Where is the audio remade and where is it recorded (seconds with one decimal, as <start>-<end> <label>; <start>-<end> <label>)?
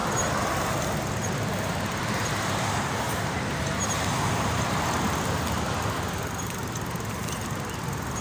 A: 0.0-0.7 remade; 0.7-1.2 recorded; 1.2-5.0 remade; 5.0-6.6 recorded; 6.6-7.2 remade; 7.2-8.2 recorded